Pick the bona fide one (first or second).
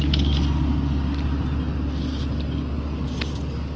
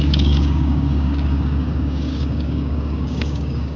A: first